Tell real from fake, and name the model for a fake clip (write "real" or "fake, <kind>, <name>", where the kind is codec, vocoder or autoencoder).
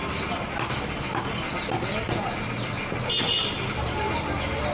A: real